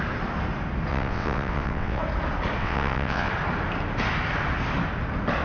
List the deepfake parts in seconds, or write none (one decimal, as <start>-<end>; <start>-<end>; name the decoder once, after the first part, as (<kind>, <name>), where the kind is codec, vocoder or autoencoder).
0.9-2.0 (vocoder, WaveNeXt); 2.6-3.3